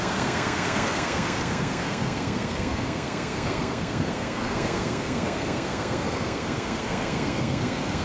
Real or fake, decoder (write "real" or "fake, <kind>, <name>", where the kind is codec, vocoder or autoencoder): fake, codec, SNAC